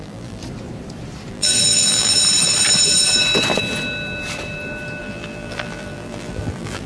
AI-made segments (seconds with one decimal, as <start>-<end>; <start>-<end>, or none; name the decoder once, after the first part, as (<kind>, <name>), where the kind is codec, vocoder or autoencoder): 0.0-0.4 (vocoder, BigVGAN v2); 1.3-2.1; 5.0-6.9